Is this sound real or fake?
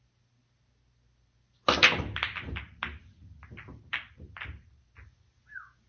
real